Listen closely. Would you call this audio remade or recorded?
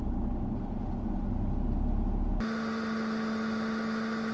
recorded